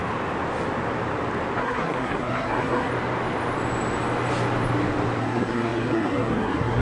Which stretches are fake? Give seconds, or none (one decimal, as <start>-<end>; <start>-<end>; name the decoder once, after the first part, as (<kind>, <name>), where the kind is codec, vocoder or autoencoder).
1.6-2.9 (codec, SNAC); 5.2-6.8